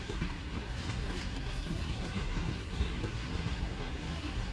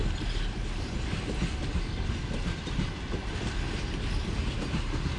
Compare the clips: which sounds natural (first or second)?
second